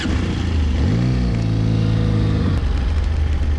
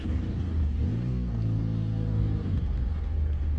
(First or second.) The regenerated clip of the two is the second